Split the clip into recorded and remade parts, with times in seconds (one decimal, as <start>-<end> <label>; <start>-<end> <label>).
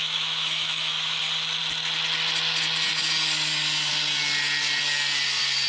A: 0.0-1.2 remade; 1.2-5.7 recorded